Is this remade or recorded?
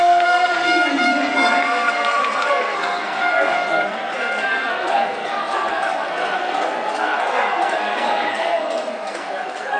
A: remade